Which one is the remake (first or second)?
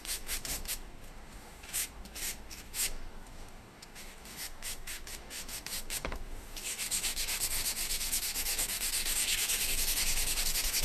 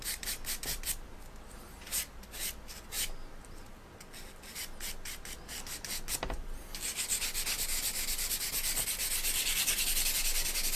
first